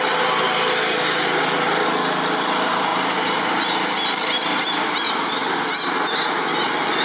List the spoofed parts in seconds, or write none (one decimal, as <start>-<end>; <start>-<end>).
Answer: none